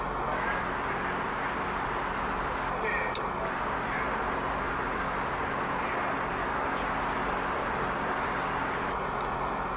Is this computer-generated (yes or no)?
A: no